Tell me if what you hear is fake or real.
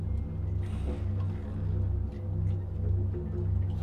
real